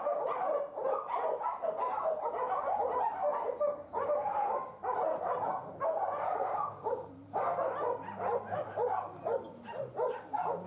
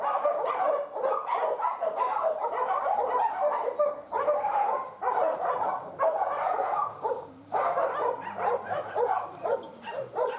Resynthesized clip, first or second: second